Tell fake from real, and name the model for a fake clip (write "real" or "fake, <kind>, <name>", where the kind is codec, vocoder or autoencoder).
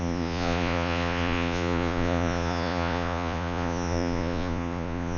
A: fake, vocoder, Vocos